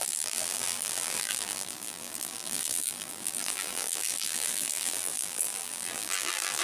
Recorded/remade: remade